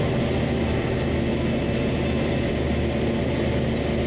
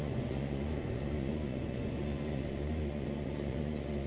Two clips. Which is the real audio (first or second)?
first